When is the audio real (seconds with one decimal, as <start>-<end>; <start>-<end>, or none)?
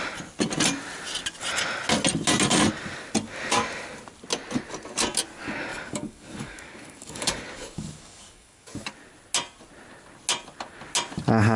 0.0-5.7; 8.9-11.6